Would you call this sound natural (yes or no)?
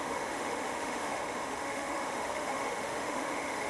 no